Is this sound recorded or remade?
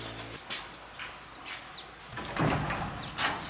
recorded